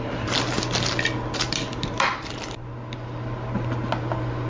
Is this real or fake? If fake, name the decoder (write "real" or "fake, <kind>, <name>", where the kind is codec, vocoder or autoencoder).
real